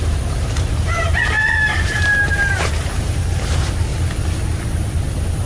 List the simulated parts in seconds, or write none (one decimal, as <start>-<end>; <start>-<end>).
0.0-3.9